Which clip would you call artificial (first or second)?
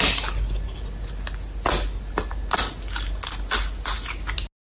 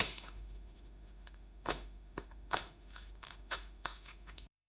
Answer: second